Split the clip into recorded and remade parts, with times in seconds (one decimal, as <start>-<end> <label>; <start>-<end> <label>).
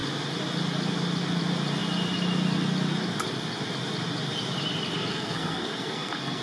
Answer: 0.0-5.1 recorded; 5.1-6.4 remade